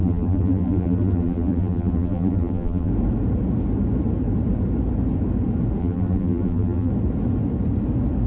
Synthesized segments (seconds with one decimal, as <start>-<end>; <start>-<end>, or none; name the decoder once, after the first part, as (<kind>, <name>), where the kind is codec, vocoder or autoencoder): 0.0-2.9 (vocoder, BigVGAN v2); 5.8-6.9